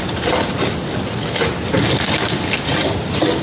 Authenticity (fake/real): real